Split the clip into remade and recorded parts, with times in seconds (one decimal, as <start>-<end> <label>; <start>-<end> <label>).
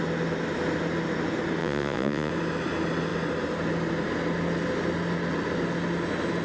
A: 0.0-1.6 recorded; 1.6-2.3 remade; 2.3-6.4 recorded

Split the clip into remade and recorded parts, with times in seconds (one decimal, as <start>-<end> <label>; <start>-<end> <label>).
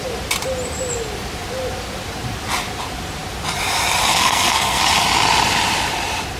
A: 0.0-4.1 recorded; 4.1-4.8 remade; 4.8-6.4 recorded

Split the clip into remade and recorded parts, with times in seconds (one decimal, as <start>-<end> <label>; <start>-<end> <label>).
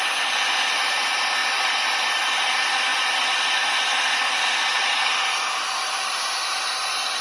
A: 0.0-7.2 recorded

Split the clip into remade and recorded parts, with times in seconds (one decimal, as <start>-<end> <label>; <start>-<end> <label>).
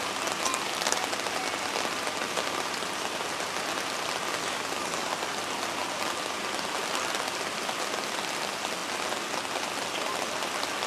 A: 0.0-4.4 recorded; 4.4-5.1 remade; 5.1-10.9 recorded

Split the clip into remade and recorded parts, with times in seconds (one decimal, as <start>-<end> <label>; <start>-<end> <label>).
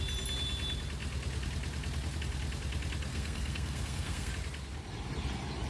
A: 0.0-3.1 recorded; 3.1-4.3 remade; 4.3-5.7 recorded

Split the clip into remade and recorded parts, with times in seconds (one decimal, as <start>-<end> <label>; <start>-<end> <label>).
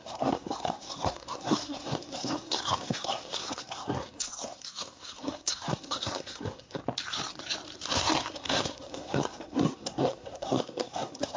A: 0.0-6.8 remade; 6.8-7.9 recorded; 7.9-11.4 remade